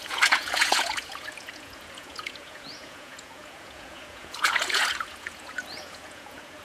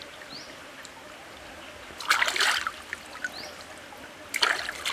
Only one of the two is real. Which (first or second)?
second